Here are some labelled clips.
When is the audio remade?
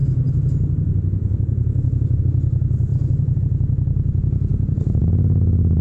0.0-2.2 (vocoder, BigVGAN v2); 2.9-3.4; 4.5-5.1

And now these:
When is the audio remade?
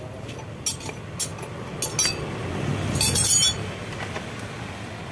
none